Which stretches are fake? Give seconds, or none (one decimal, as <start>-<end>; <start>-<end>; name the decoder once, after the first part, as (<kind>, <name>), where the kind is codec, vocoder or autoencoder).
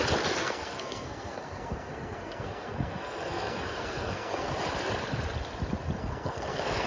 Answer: 0.4-4.5 (codec, SNAC); 6.0-6.9